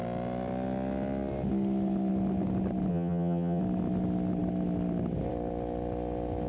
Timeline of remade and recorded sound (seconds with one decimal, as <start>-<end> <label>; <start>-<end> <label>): 0.0-2.9 recorded; 2.9-3.6 remade; 3.6-6.5 recorded